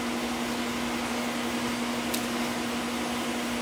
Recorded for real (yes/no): yes